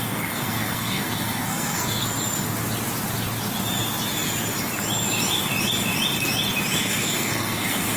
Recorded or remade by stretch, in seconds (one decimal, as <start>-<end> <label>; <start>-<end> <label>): 0.0-2.0 remade; 2.0-6.8 recorded; 6.8-8.0 remade

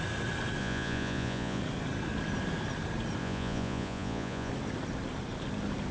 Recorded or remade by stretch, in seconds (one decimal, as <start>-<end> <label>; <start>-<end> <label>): 0.0-0.6 recorded; 0.6-1.6 remade; 1.6-3.2 recorded; 3.2-4.5 remade; 4.5-5.9 recorded